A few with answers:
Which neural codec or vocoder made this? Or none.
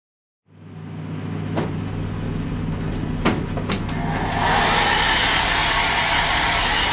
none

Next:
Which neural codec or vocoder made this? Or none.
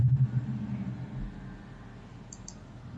none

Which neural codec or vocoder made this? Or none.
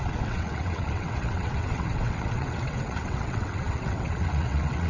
vocoder, WaveNeXt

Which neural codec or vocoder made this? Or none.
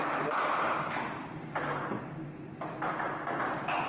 none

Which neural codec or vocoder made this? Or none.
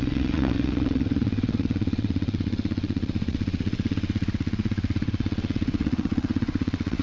vocoder, WaveNeXt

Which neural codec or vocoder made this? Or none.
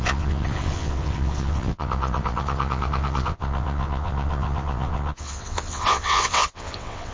vocoder, WaveNeXt